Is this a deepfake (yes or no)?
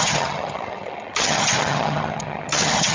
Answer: yes